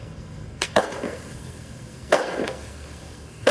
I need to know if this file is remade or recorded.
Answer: remade